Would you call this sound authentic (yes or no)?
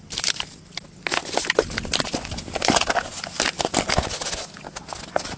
yes